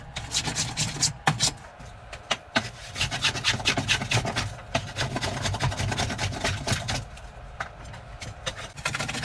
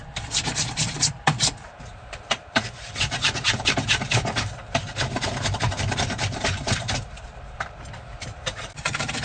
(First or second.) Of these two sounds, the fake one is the second